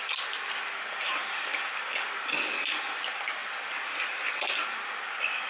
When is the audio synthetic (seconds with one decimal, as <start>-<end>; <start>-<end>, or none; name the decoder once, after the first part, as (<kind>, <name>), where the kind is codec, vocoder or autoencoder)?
3.4-3.9 (vocoder, BigVGAN v2)